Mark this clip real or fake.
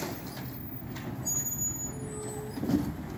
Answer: real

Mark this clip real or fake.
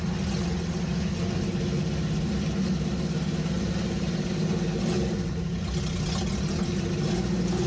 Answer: real